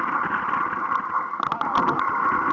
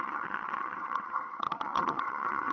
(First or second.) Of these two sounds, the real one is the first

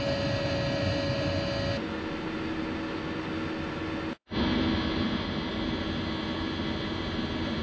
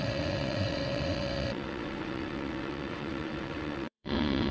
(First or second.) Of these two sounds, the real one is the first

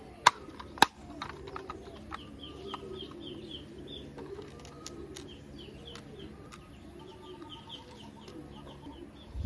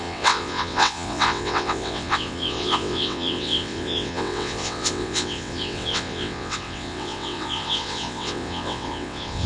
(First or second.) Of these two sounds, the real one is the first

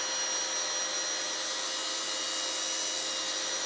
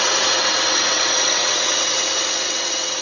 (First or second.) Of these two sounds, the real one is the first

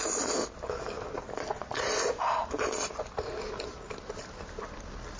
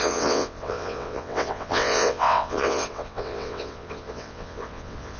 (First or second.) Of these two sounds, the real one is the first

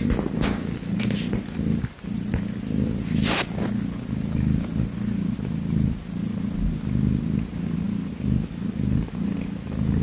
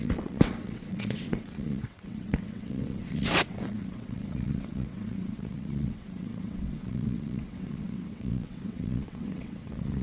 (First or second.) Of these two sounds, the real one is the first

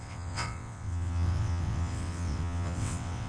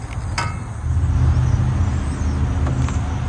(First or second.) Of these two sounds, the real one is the second